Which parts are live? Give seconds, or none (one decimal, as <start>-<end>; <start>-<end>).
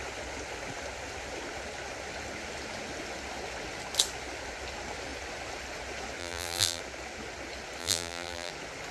0.0-6.2; 6.8-7.8; 8.5-8.9